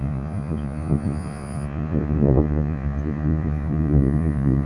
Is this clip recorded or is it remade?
remade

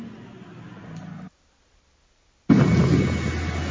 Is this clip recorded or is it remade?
recorded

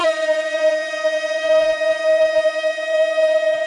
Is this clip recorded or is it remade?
remade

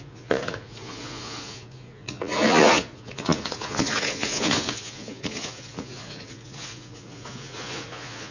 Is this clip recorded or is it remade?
remade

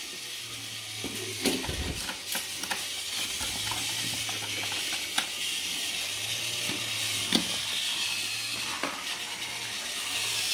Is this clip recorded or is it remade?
recorded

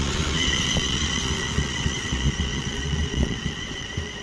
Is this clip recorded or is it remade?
remade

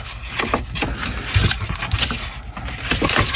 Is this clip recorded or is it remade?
recorded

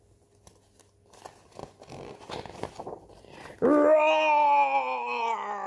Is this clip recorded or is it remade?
recorded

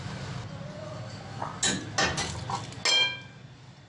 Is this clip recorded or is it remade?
recorded